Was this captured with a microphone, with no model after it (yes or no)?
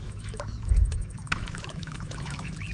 no